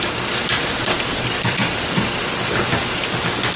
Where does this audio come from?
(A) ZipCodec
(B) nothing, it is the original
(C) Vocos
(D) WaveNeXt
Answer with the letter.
B